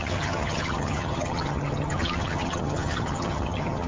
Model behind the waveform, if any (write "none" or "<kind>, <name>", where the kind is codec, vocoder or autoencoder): vocoder, HiFi-GAN